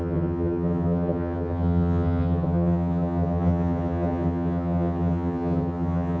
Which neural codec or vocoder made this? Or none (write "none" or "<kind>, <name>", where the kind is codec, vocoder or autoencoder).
vocoder, HiFi-GAN